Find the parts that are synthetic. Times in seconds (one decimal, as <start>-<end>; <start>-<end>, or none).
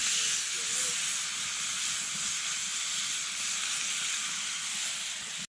none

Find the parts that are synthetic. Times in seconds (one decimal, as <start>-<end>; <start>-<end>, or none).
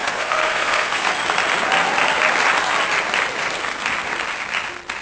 0.0-1.1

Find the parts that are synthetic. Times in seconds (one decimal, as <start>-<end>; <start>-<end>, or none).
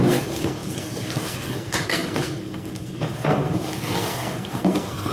0.0-5.1